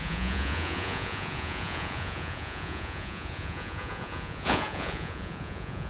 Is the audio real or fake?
fake